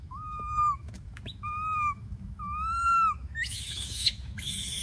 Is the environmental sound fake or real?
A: fake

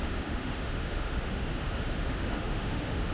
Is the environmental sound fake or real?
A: fake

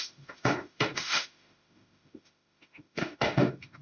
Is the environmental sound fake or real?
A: fake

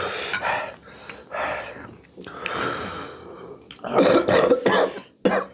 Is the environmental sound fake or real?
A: real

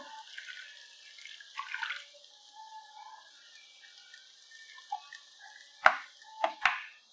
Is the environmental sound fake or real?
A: real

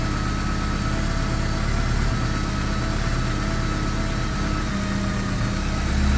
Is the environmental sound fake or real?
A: real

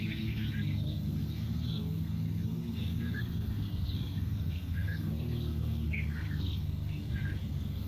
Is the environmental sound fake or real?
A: fake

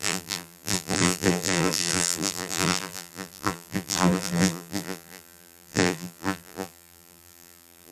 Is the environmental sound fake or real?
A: fake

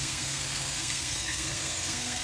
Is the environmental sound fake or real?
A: fake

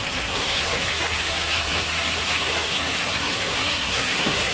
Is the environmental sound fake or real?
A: fake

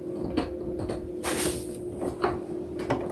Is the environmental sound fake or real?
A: real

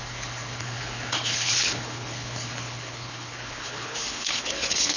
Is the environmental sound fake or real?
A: fake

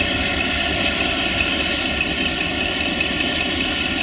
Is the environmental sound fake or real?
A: real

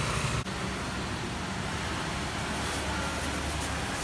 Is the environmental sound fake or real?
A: real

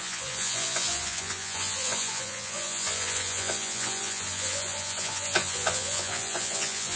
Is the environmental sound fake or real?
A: fake